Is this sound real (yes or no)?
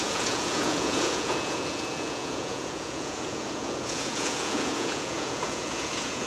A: no